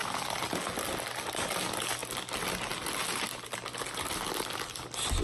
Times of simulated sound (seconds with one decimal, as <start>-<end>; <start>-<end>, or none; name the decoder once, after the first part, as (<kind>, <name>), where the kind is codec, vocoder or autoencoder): none